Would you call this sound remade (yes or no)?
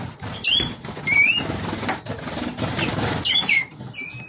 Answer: no